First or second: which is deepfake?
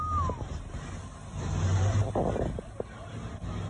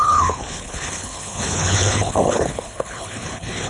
second